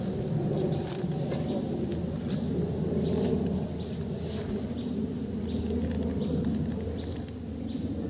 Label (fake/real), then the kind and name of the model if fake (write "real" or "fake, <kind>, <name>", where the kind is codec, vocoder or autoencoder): real